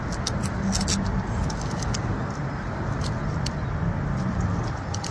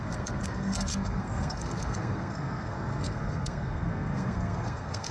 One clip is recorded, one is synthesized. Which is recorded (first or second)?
first